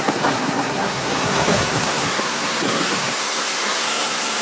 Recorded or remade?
remade